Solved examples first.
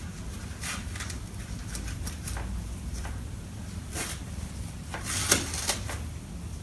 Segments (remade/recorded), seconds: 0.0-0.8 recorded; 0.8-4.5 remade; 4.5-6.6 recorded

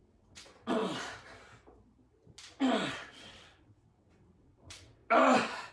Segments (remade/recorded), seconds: 0.0-0.8 remade; 0.8-2.9 recorded; 2.9-5.0 remade; 5.0-5.7 recorded

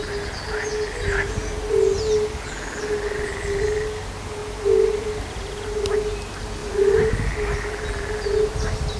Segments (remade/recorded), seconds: 0.0-4.4 recorded; 4.4-5.8 remade; 5.8-6.6 recorded; 6.6-7.1 remade; 7.1-9.0 recorded

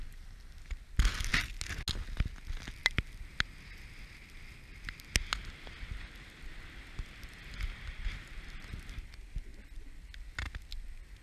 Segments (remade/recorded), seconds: 0.0-11.2 recorded